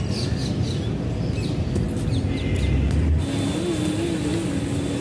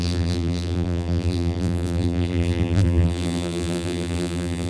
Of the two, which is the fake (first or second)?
second